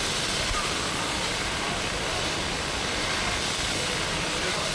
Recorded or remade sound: recorded